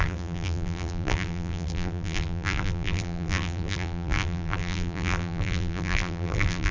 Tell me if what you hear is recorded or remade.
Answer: remade